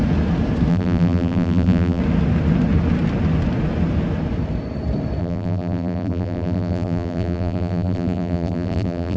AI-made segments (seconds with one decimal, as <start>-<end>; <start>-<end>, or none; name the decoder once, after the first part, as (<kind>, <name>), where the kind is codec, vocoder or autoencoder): 0.7-2.0 (vocoder, BigVGAN v2); 5.2-9.2